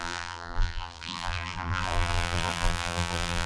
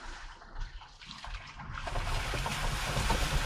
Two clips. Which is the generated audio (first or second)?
first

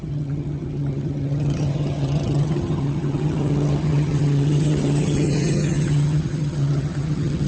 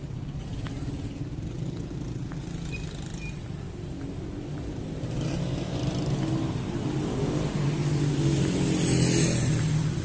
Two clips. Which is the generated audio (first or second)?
first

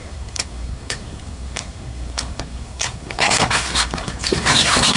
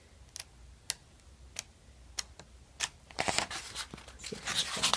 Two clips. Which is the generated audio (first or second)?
first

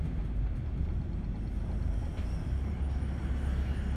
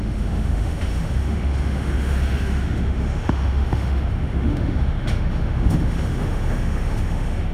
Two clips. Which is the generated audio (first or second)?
second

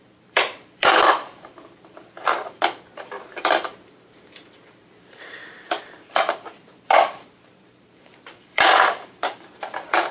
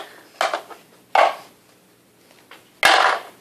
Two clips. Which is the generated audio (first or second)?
first